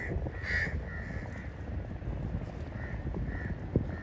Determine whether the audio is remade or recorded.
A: recorded